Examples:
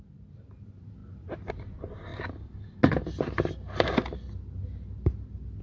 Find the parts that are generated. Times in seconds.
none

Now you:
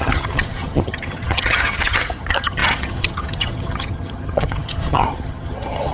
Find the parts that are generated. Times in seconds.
0.0-5.9

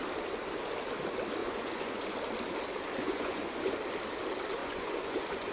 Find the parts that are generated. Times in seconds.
1.4-2.1; 3.0-3.7; 4.6-5.5

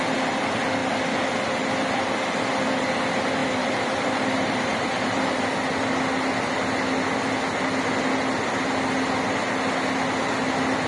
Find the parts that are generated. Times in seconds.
3.4-5.4

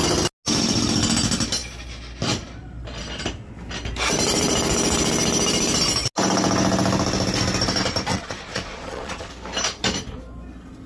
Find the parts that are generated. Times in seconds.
8.1-9.3

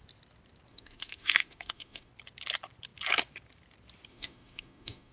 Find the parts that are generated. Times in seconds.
0.7-2.1; 4.1-5.1

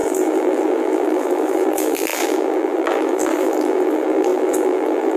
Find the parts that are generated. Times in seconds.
0.0-5.2